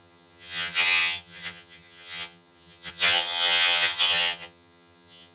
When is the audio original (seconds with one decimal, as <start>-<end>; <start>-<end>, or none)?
none